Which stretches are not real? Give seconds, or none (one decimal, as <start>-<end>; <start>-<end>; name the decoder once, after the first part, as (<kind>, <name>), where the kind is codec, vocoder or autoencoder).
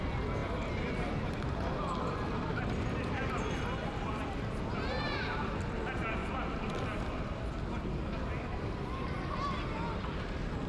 0.4-1.3 (vocoder, BigVGAN v2)